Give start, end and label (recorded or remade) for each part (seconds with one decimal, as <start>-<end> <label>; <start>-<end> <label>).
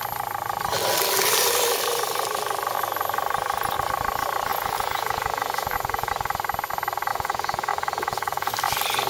0.0-4.5 recorded; 4.5-6.1 remade; 6.1-7.1 recorded; 7.1-8.5 remade; 8.5-9.1 recorded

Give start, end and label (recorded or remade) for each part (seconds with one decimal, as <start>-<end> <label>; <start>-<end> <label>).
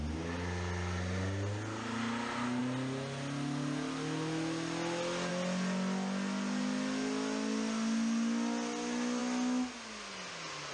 0.0-10.7 recorded